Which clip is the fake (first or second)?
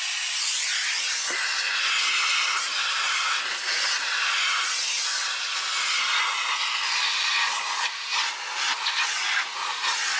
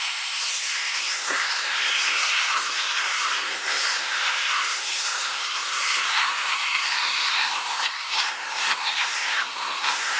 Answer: second